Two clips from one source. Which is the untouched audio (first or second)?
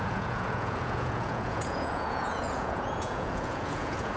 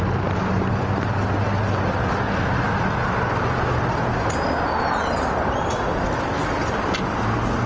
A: second